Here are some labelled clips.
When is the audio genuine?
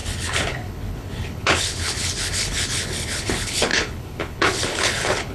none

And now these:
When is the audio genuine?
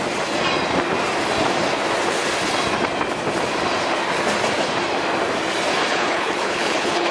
0.0-5.9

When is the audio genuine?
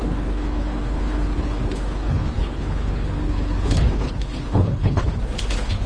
none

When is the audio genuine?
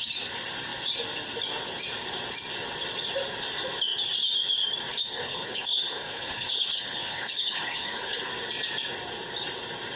0.0-5.1; 8.3-10.0